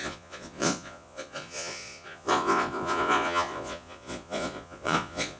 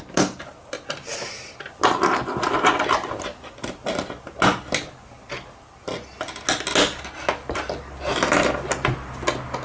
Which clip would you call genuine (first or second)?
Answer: second